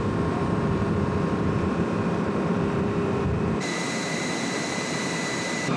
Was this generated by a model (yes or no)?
yes